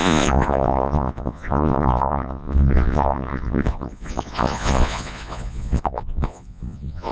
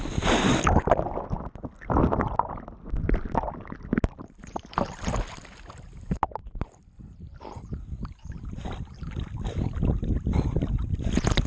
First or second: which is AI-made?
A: first